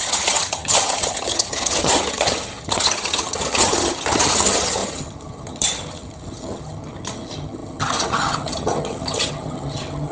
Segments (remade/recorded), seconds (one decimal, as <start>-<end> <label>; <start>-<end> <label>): 0.0-10.1 remade